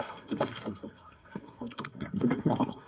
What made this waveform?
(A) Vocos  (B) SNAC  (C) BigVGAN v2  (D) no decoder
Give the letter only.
B